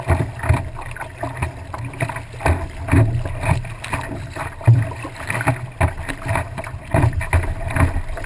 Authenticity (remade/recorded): recorded